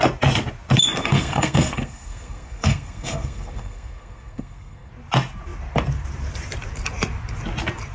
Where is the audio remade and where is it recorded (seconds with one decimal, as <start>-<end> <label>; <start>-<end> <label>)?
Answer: 0.0-1.0 recorded; 1.0-4.9 remade; 4.9-7.9 recorded